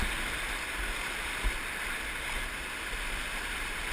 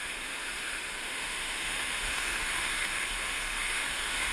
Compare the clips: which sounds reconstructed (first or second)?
second